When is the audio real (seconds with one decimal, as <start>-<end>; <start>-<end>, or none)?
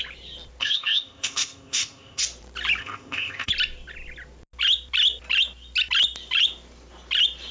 0.0-0.6; 2.2-2.8; 3.5-7.5